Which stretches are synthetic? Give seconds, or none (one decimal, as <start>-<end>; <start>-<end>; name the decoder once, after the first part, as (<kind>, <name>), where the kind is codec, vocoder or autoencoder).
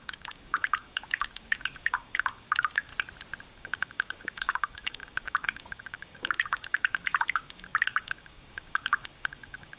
0.0-2.9 (codec, DAC); 3.5-9.8